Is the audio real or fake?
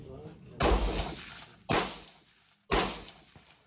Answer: real